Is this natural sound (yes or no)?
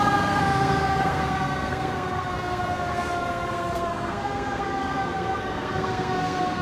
no